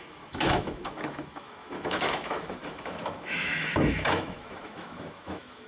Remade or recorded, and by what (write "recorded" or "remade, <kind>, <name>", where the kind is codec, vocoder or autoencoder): remade, autoencoder, DAC-VAE